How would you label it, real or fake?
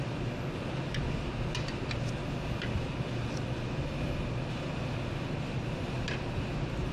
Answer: real